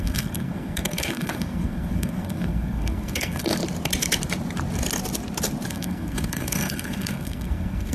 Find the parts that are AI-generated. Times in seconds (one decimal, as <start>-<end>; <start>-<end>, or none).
0.0-3.6; 5.7-7.9